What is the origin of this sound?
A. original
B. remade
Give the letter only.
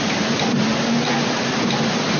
A